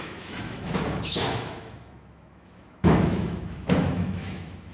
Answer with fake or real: fake